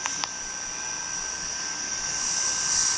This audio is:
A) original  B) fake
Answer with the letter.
A